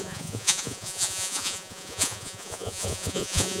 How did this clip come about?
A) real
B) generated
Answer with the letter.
B